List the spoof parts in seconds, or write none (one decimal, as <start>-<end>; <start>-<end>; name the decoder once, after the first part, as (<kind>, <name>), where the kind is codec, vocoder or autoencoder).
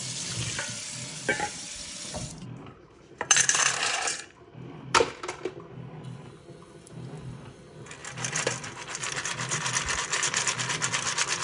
1.3-5.2 (vocoder, BigVGAN v2)